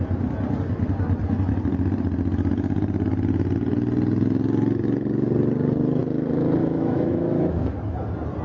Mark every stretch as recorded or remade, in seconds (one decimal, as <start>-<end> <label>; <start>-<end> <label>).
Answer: 0.0-6.6 recorded; 6.6-7.6 remade; 7.6-8.4 recorded